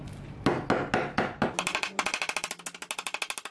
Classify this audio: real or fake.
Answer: real